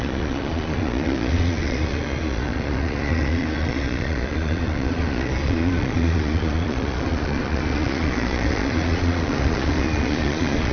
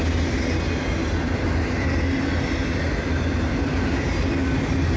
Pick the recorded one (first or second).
second